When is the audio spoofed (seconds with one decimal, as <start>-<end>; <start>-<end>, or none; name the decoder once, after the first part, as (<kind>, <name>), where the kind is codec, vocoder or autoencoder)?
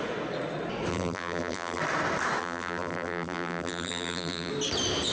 0.9-1.8 (vocoder, BigVGAN v2); 2.4-4.5